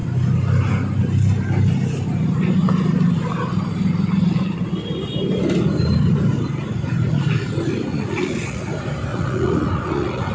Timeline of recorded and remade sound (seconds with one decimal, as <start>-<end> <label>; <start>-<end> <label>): 0.0-7.9 recorded; 7.9-8.7 remade; 8.7-9.1 recorded; 9.1-10.3 remade